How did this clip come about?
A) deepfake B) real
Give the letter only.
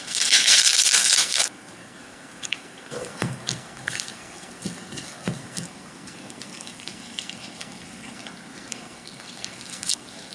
A